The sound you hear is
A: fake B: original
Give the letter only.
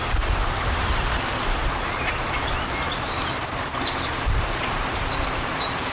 A